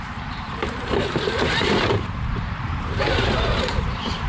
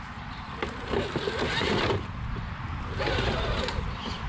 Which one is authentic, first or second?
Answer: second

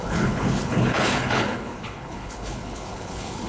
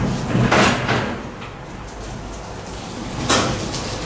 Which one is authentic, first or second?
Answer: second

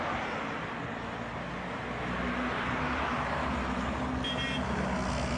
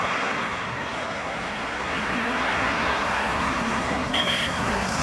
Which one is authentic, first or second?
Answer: first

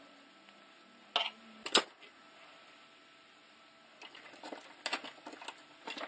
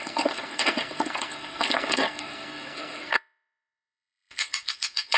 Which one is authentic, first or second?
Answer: first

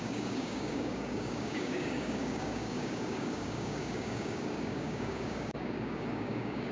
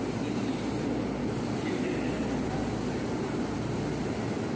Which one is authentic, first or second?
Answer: second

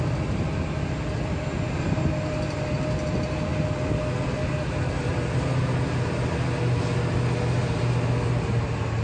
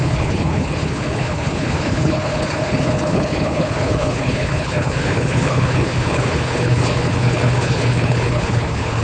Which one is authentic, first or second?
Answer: first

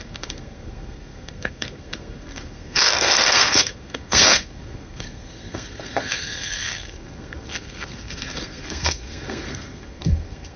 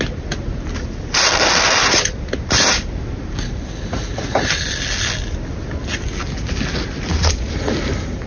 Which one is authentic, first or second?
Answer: second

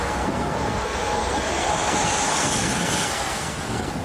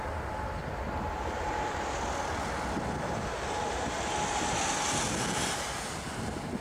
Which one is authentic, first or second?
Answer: second